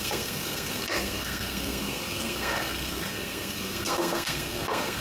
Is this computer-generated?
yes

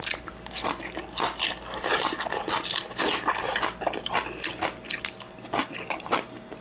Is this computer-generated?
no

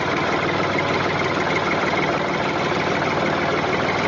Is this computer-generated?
no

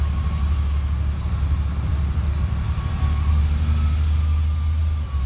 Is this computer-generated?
no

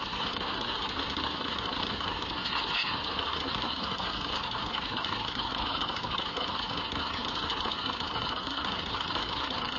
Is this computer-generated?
yes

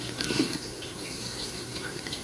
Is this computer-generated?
yes